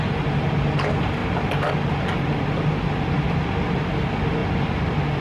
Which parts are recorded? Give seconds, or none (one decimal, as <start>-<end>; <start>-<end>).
0.0-5.2